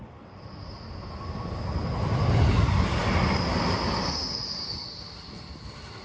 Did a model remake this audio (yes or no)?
no